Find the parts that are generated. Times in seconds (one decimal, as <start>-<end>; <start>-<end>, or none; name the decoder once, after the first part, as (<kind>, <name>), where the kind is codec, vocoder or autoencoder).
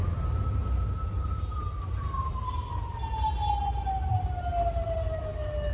none